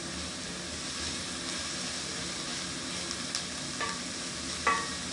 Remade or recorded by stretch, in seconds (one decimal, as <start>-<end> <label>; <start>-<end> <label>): 0.0-5.1 recorded